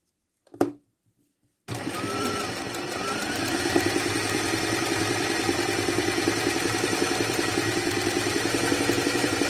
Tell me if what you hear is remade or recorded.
remade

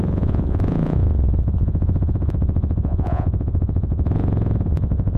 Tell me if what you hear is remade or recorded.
remade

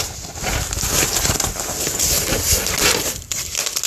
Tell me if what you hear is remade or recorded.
recorded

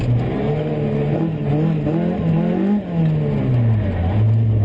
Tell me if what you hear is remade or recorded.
recorded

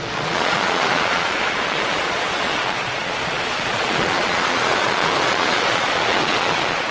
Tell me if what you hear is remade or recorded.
remade